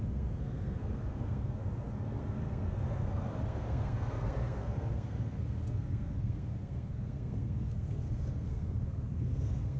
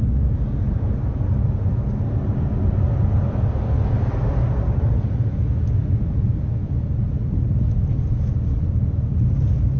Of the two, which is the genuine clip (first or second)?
second